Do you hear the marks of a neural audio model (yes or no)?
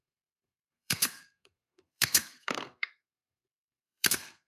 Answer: yes